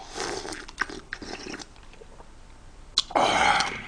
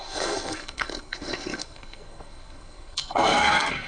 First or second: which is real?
first